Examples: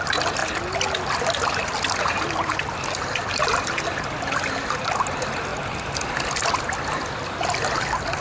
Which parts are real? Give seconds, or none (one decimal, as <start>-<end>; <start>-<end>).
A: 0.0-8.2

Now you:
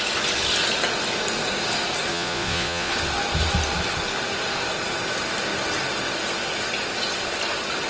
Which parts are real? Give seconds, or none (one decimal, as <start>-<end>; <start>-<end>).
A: 0.0-2.1; 2.9-7.9

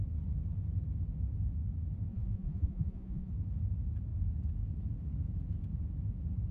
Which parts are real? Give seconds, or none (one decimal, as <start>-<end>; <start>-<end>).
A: 0.0-2.1; 3.3-6.5

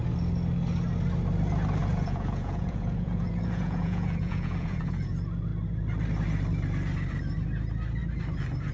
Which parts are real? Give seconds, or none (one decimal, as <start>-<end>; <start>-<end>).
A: 0.0-1.8; 5.1-8.7

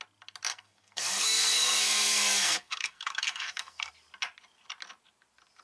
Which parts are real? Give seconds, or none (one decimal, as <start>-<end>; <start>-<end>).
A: 0.0-0.5; 3.9-5.6

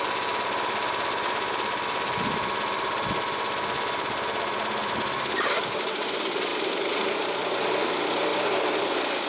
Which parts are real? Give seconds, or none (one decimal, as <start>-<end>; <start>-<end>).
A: 0.0-8.3; 8.8-9.3

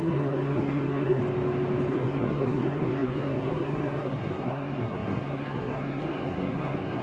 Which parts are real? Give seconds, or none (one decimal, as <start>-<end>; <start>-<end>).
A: 1.2-1.9

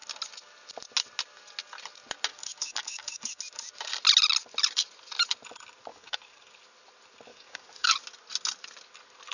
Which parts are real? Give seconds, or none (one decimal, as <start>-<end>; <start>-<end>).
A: 0.0-2.3; 3.4-5.9; 6.5-7.3; 8.0-9.3